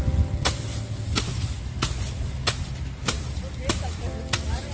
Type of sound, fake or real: real